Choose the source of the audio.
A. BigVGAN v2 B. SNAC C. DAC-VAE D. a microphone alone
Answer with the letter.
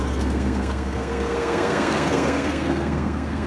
B